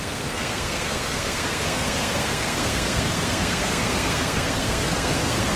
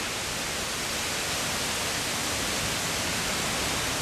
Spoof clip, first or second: first